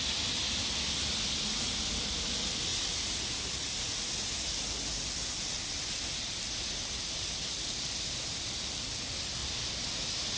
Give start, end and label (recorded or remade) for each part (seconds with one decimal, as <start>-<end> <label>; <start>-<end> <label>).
0.0-10.4 recorded